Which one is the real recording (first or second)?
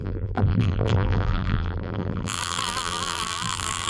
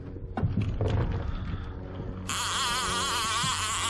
second